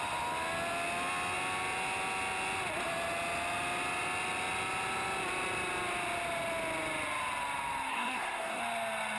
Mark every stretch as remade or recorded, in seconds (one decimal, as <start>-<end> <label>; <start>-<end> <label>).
0.0-7.9 recorded; 7.9-8.6 remade; 8.6-9.2 recorded